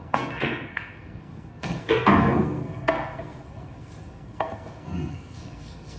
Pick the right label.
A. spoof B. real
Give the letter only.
A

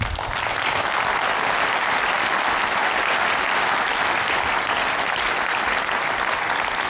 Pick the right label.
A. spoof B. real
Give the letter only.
B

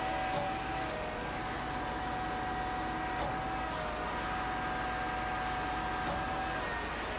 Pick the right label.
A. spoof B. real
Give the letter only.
B